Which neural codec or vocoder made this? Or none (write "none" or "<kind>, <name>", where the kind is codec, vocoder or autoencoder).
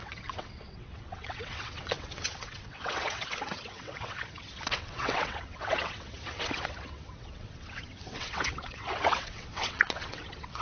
vocoder, WaveNeXt